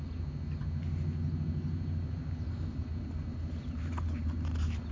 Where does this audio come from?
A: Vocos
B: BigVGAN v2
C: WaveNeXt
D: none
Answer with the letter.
D